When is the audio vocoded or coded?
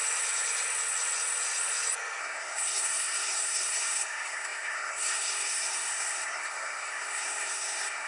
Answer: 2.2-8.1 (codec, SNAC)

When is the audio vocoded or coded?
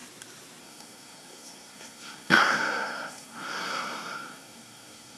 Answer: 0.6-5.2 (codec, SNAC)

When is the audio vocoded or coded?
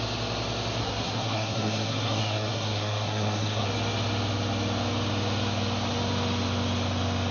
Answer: 0.8-3.7 (codec, SNAC)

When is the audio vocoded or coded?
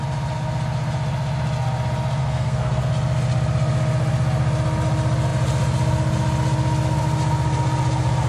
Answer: 2.2-2.9 (codec, SNAC)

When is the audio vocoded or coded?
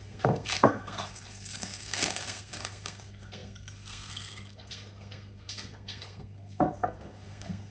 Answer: 0.0-7.7 (codec, SNAC)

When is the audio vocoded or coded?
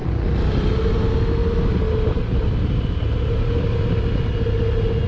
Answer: none